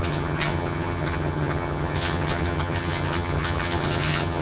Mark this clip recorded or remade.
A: remade